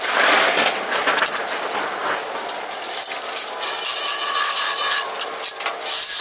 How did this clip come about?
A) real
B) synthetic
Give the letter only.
A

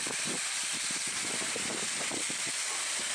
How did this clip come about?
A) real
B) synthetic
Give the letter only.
A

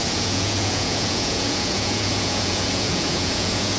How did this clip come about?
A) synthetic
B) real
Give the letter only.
A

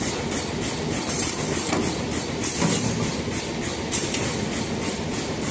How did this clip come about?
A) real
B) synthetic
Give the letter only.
A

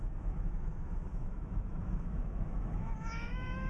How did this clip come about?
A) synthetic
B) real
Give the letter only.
A